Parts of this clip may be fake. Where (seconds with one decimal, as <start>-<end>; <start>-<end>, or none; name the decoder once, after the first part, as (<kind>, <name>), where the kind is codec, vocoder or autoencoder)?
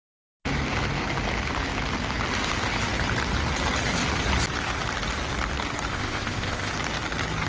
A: 5.9-6.7 (codec, ZipCodec)